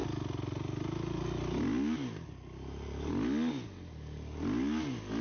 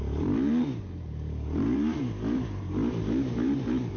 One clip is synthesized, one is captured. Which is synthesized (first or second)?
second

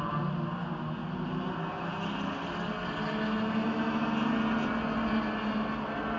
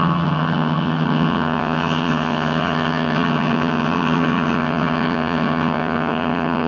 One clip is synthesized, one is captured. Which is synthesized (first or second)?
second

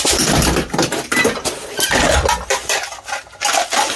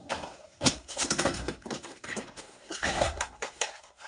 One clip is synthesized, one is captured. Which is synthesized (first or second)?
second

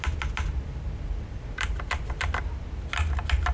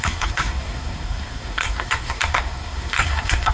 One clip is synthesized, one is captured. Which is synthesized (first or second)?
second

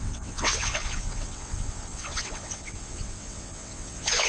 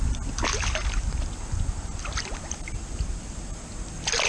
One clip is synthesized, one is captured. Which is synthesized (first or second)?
first